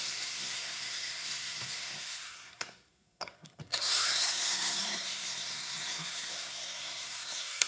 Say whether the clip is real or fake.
fake